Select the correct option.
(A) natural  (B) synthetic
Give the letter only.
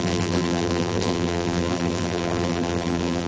B